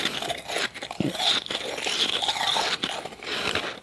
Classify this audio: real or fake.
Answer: real